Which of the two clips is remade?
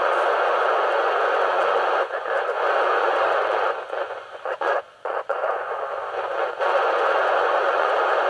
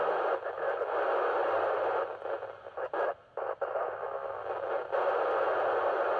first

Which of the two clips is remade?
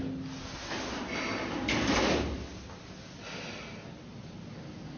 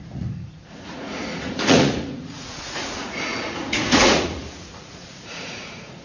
second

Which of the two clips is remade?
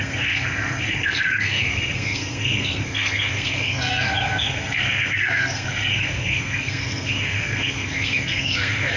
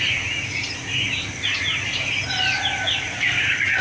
first